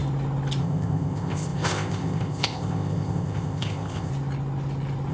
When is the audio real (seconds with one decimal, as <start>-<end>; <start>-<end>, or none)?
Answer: 0.0-0.6; 4.1-5.1